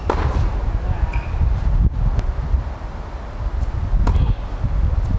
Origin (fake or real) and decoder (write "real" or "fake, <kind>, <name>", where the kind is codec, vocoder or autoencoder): real